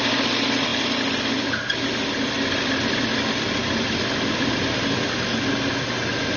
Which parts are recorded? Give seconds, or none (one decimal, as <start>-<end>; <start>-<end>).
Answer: 0.0-6.4